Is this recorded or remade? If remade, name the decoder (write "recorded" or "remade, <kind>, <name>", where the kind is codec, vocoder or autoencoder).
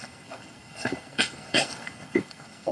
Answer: remade, codec, SNAC